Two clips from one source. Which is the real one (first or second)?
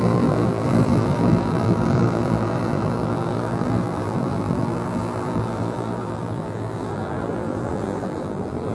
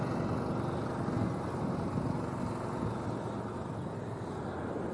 second